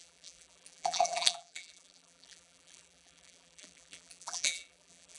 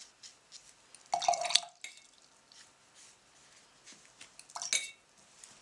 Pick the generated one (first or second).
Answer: first